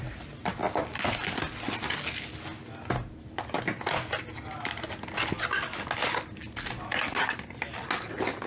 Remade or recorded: recorded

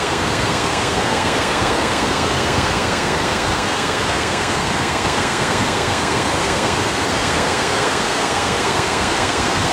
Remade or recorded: remade